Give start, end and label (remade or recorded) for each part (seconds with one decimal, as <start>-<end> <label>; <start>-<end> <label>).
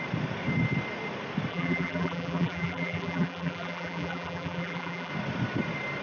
0.0-1.5 recorded; 1.5-5.1 remade; 5.1-6.0 recorded